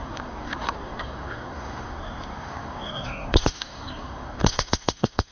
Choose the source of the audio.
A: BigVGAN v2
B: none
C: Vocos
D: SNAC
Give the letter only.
D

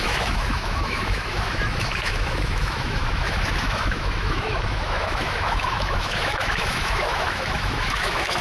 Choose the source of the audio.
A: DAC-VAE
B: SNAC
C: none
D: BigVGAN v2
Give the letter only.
A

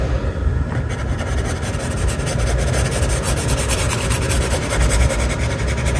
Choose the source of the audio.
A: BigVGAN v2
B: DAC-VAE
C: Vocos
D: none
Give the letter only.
D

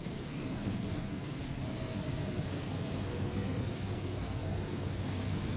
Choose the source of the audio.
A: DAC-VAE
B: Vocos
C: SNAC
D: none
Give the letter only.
C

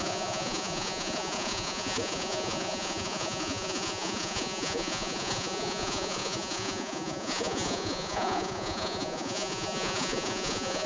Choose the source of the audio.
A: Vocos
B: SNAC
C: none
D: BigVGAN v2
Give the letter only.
A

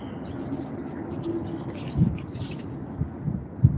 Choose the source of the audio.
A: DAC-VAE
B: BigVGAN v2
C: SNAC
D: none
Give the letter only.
D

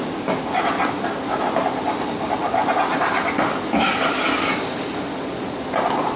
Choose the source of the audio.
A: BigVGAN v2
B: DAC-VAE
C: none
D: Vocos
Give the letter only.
C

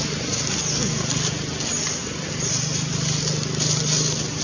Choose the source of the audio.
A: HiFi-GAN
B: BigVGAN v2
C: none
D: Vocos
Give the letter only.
C